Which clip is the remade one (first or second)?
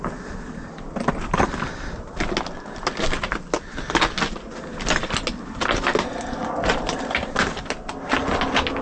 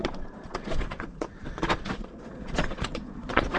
second